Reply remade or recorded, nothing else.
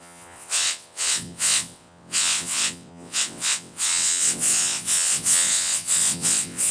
remade